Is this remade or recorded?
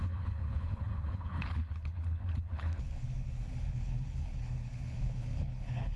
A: remade